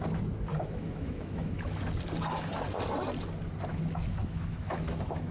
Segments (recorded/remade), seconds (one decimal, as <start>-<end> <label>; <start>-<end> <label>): 0.0-0.5 recorded; 0.5-1.9 remade; 1.9-3.7 recorded; 3.7-5.3 remade